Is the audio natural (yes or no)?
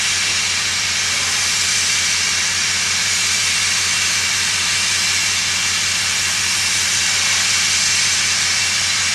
yes